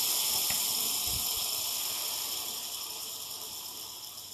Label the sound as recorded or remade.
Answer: recorded